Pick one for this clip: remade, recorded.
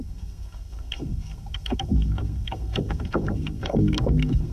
remade